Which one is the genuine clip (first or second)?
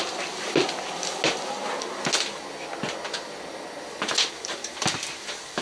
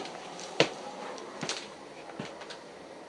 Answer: first